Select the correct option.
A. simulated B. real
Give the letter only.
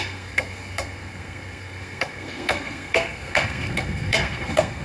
A